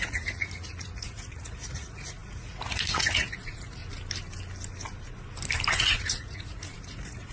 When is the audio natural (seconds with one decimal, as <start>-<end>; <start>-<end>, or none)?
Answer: 3.8-5.8